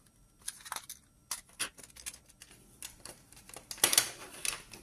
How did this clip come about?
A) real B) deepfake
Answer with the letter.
A